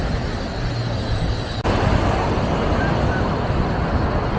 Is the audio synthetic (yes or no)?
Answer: no